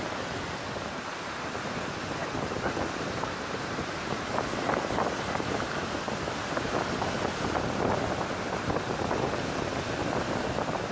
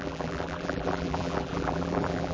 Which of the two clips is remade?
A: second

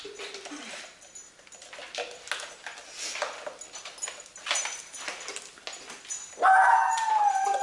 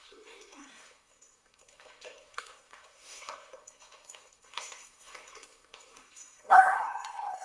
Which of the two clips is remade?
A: second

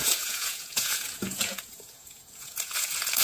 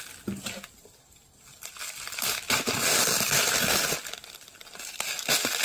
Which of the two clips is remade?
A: first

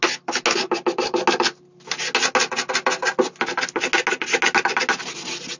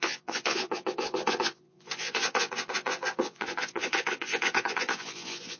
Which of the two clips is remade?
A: second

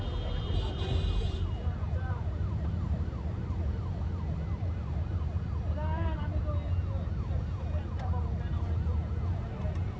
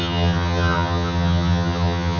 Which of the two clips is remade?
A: second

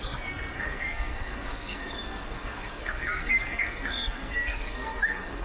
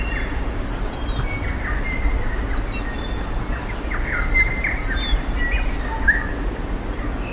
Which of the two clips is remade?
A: first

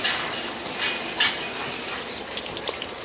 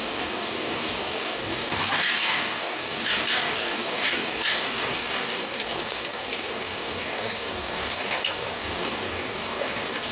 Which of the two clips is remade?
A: second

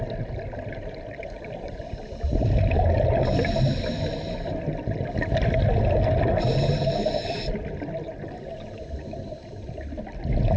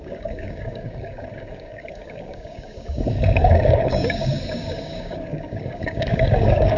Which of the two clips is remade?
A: second